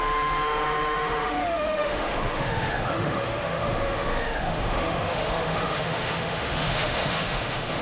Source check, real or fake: fake